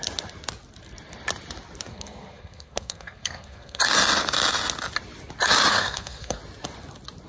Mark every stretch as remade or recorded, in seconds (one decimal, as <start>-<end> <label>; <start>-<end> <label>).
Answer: 0.0-1.9 recorded; 1.9-3.8 remade; 3.8-5.7 recorded; 5.7-6.4 remade; 6.4-7.3 recorded